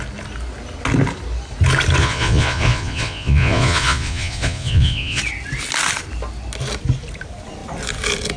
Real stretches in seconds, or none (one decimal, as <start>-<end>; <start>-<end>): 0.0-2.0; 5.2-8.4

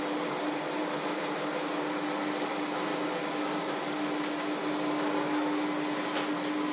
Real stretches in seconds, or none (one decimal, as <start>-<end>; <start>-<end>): 0.0-6.7

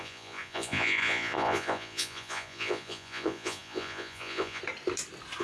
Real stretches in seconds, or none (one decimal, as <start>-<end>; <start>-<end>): 4.6-5.4

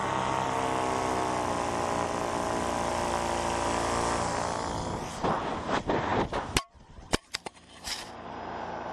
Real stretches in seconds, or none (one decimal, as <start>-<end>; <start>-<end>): 0.0-5.0

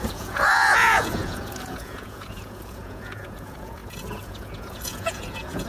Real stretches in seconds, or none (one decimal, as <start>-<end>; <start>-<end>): none

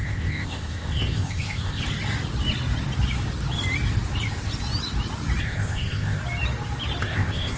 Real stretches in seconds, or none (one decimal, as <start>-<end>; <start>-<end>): 1.8-5.4; 6.2-7.0